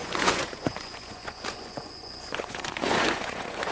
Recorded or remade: remade